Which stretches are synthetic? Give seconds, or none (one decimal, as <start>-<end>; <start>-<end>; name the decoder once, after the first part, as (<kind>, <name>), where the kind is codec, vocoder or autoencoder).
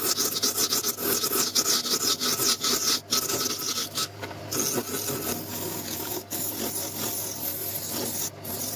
3.8-4.4 (codec, DAC); 5.5-6.5